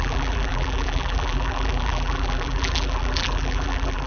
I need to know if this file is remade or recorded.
remade